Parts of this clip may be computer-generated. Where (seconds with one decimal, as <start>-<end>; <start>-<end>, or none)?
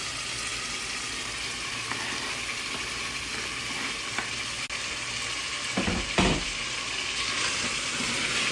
none